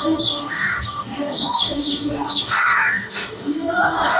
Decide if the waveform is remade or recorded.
remade